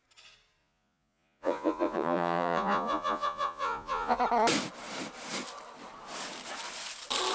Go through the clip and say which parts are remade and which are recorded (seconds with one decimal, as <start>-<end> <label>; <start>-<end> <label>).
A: 0.0-0.6 recorded; 0.6-4.2 remade; 4.2-7.3 recorded